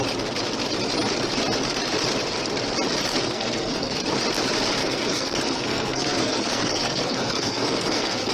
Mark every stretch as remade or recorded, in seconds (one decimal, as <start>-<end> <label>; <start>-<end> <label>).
0.0-3.2 recorded; 3.2-4.0 remade; 4.0-4.8 recorded; 4.8-8.3 remade